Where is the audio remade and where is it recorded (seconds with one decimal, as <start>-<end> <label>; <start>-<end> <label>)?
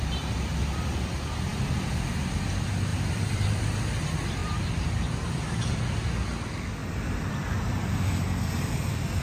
0.0-1.5 recorded; 1.5-2.1 remade; 2.1-2.9 recorded; 2.9-3.6 remade; 3.6-4.4 recorded; 4.4-5.8 remade; 5.8-6.8 recorded; 6.8-7.6 remade; 7.6-9.2 recorded